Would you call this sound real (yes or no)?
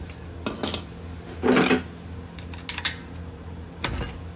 yes